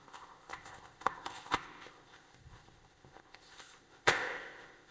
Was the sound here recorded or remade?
remade